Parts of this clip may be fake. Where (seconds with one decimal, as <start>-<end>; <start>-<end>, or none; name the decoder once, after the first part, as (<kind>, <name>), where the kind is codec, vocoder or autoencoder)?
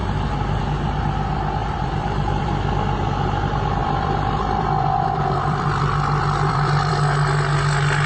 1.6-2.5 (vocoder, BigVGAN v2); 3.8-6.9